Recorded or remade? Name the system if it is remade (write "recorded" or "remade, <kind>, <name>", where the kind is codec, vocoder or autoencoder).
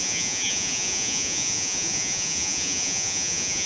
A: remade, vocoder, Vocos